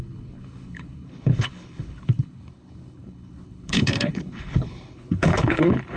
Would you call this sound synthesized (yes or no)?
yes